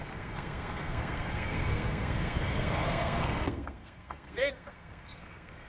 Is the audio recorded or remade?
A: remade